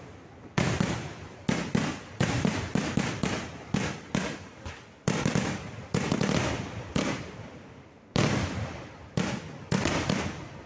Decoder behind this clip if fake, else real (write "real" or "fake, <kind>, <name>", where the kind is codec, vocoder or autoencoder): fake, vocoder, BigVGAN v2